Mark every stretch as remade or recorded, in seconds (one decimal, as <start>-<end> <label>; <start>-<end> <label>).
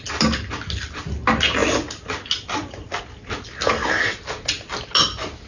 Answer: 0.0-5.5 recorded